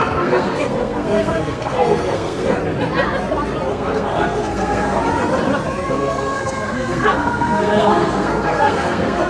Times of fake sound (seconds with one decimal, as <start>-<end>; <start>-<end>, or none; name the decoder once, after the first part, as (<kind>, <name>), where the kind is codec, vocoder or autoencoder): 0.0-2.6 (codec, SNAC); 3.7-5.0; 5.9-9.3